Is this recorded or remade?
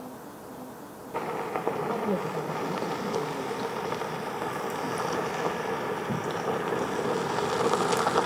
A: recorded